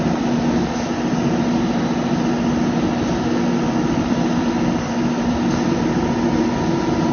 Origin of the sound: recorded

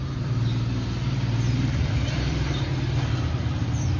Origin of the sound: remade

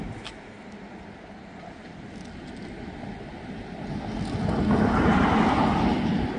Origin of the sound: recorded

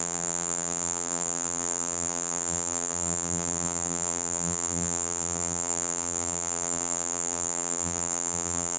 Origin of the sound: remade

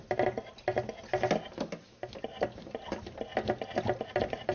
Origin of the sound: recorded